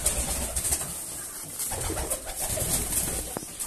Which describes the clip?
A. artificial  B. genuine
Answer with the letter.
B